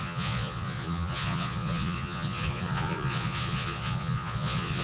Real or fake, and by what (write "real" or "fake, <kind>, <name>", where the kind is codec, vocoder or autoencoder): fake, vocoder, Vocos